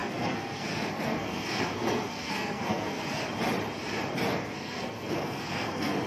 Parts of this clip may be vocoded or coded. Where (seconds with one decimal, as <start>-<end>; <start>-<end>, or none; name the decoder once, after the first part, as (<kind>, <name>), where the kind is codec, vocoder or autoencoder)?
0.0-3.2 (codec, SNAC); 4.3-6.1